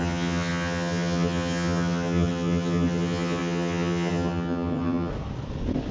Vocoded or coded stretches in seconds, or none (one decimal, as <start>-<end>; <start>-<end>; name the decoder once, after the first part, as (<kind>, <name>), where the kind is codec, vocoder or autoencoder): 0.0-5.1 (vocoder, HiFi-GAN)